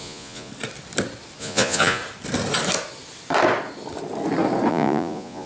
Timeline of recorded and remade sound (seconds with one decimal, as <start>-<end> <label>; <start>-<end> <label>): 0.0-0.5 remade; 0.5-1.4 recorded; 1.4-2.0 remade; 2.0-4.7 recorded; 4.7-5.5 remade